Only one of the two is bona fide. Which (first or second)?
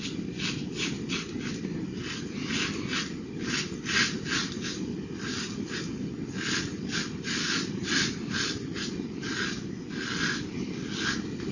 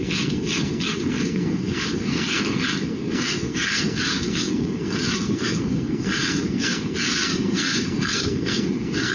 first